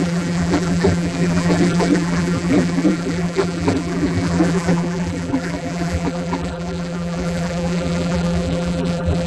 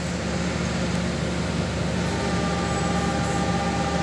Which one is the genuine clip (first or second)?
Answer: second